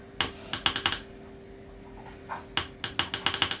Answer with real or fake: real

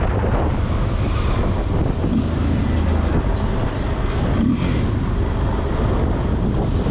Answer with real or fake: real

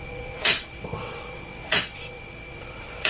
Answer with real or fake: fake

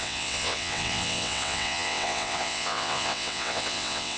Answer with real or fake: fake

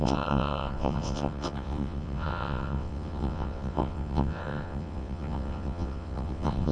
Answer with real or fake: fake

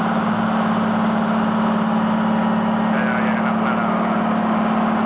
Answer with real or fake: real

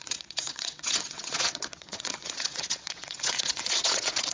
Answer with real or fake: fake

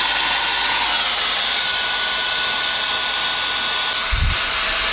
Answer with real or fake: real